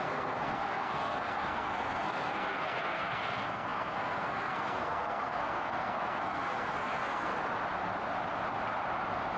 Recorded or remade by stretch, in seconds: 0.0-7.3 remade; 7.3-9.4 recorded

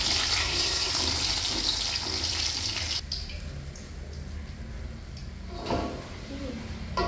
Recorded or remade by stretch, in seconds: 0.0-0.4 recorded; 0.4-0.9 remade; 0.9-7.1 recorded